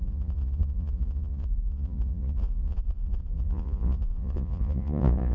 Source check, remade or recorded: remade